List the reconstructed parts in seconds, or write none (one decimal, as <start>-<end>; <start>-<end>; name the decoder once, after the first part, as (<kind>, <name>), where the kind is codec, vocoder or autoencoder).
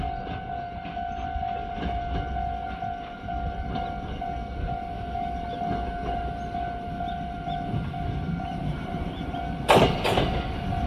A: 8.5-9.4 (vocoder, BigVGAN v2)